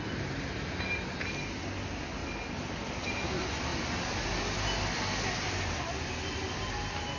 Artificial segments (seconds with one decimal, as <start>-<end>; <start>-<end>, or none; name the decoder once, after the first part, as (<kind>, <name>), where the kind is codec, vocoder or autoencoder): none